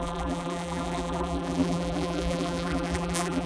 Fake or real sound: fake